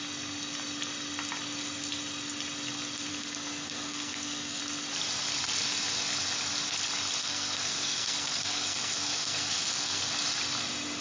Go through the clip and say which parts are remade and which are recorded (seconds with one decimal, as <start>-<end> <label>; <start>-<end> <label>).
0.0-3.1 recorded; 3.1-4.6 remade; 4.6-7.2 recorded; 7.2-10.0 remade; 10.0-11.0 recorded

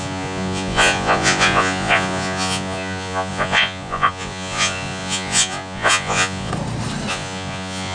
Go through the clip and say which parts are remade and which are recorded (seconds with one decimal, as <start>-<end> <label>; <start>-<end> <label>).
0.0-6.5 remade; 6.5-7.1 recorded; 7.1-7.9 remade

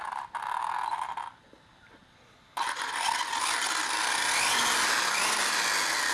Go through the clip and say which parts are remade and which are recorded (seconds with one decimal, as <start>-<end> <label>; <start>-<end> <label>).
0.0-6.1 recorded

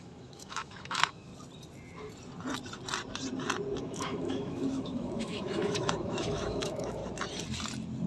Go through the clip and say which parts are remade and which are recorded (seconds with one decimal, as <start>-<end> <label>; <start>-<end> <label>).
0.0-1.3 remade; 1.3-3.8 recorded; 3.8-7.0 remade; 7.0-8.1 recorded